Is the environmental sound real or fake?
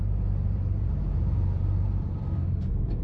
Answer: fake